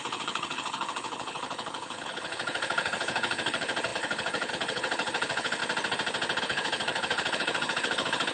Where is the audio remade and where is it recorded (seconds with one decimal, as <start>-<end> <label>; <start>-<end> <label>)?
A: 0.0-5.6 remade; 5.6-6.4 recorded; 6.4-8.3 remade